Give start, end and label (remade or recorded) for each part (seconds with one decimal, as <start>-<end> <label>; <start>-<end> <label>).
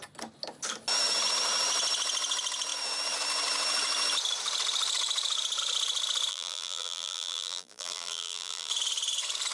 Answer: 0.0-6.3 recorded; 6.3-8.7 remade; 8.7-9.5 recorded